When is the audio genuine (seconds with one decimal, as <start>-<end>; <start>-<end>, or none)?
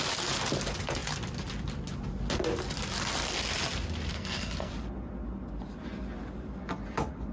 0.0-4.1; 4.7-7.3